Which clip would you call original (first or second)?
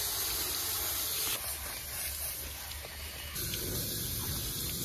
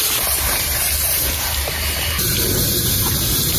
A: first